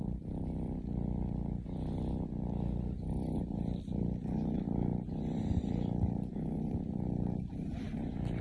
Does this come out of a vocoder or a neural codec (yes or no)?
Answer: no